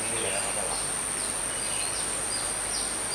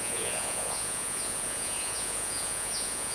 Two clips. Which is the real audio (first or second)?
first